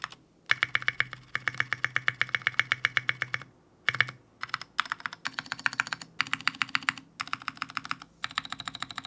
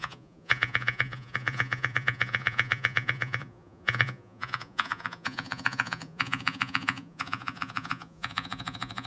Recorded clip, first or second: first